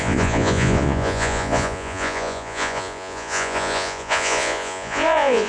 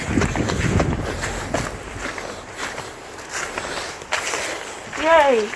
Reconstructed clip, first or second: first